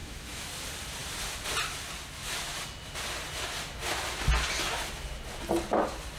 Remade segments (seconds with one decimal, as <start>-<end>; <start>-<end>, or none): 0.0-0.5